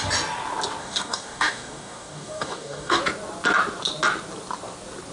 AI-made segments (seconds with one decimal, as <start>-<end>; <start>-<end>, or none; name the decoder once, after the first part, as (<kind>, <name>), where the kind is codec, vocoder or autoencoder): 0.8-3.0 (codec, DAC)